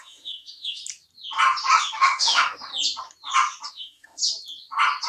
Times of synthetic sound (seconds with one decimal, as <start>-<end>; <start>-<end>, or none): 0.0-0.8; 1.8-2.7; 3.7-4.2